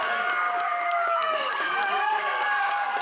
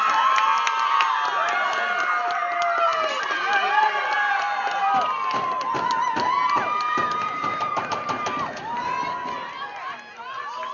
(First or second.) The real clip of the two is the second